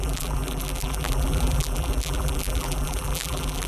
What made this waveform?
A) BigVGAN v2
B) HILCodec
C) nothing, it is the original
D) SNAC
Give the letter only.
A